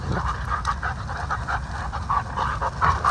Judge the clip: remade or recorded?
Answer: recorded